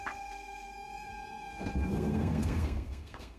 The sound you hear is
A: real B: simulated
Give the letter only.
B